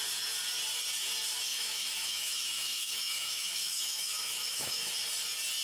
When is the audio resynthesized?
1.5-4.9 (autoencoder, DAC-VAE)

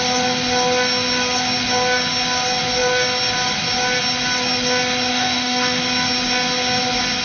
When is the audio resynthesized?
5.1-5.8 (autoencoder, DAC-VAE)